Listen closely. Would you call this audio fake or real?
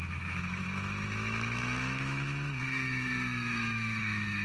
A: fake